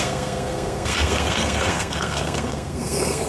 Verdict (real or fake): fake